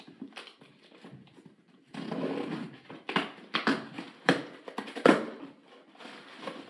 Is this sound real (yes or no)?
yes